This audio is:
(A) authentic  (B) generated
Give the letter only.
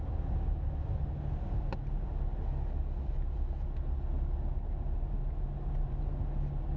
A